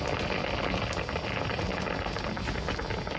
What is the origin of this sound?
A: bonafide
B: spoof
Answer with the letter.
A